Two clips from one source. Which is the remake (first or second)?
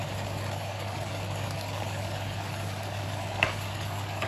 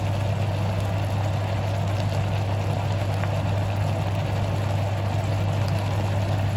first